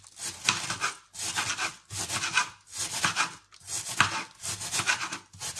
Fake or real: real